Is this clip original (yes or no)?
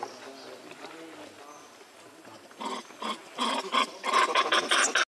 yes